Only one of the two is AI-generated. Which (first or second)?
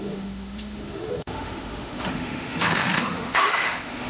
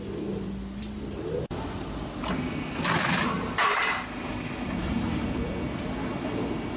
first